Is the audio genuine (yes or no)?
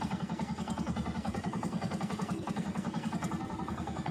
no